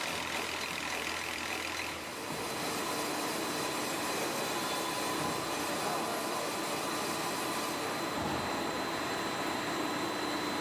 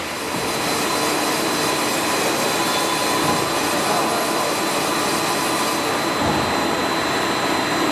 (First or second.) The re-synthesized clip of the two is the first